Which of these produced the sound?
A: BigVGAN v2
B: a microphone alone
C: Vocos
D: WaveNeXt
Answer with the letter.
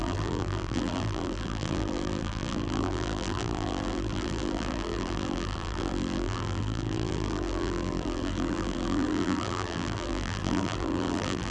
A